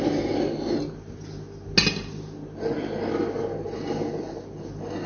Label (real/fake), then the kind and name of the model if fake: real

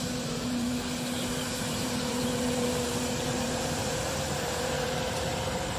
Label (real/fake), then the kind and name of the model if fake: fake, vocoder, BigVGAN v2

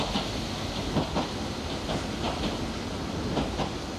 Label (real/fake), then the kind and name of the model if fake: real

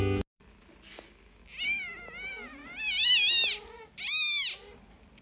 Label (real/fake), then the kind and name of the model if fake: real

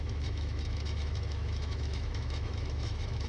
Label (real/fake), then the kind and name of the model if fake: fake, autoencoder, DAC-VAE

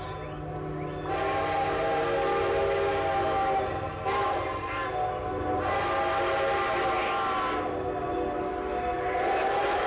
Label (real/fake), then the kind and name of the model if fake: real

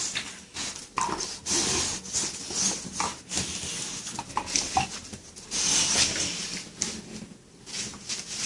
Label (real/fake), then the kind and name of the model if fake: real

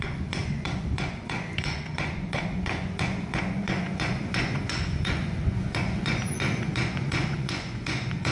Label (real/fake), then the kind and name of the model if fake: fake, vocoder, Vocos